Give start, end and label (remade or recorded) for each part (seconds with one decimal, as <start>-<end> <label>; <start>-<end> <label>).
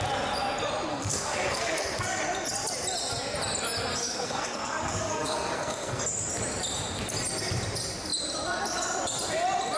0.0-0.9 recorded; 0.9-2.2 remade; 2.2-3.9 recorded; 3.9-6.0 remade; 6.0-9.8 recorded